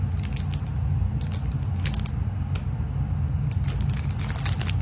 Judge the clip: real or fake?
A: real